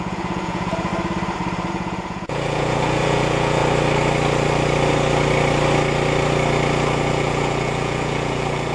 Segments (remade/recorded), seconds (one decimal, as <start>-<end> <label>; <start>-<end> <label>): 0.0-0.9 remade; 0.9-1.7 recorded; 1.7-3.6 remade; 3.6-7.1 recorded; 7.1-8.7 remade